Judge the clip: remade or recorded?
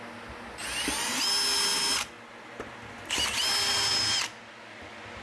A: recorded